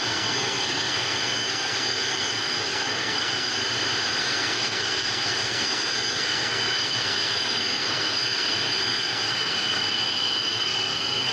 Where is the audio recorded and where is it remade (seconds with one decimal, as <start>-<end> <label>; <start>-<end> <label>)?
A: 0.0-3.6 remade; 3.6-4.2 recorded; 4.2-11.3 remade